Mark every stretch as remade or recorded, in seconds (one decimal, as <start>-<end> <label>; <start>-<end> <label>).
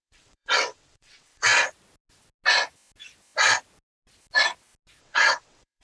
0.0-1.5 remade; 1.5-5.0 recorded; 5.0-5.8 remade